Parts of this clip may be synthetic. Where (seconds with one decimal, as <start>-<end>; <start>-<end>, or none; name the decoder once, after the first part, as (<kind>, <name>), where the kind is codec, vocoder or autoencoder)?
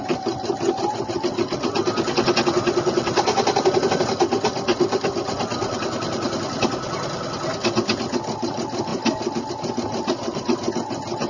none